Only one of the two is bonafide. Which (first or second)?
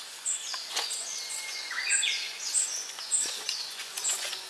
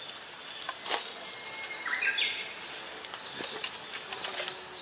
second